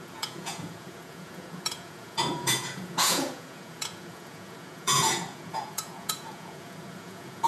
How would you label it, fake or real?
fake